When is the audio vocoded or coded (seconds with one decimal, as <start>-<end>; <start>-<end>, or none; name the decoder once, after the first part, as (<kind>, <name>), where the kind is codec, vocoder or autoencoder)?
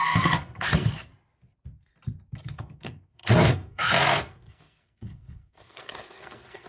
0.0-1.1 (codec, SNAC); 2.4-6.7